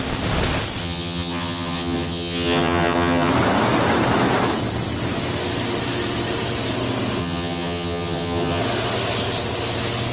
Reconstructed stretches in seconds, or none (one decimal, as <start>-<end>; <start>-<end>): 0.8-3.3; 7.2-8.6